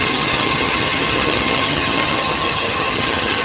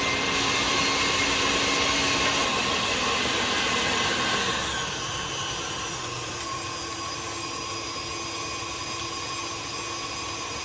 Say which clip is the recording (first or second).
second